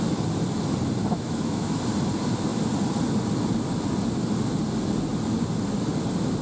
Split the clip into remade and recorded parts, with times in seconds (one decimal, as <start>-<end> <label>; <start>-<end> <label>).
0.0-1.0 recorded; 1.0-1.8 remade; 1.8-6.4 recorded